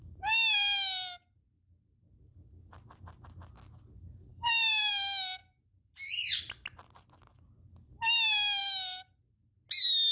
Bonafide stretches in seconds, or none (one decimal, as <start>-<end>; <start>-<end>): 0.0-4.3; 4.9-5.4; 6.4-8.6; 9.2-10.1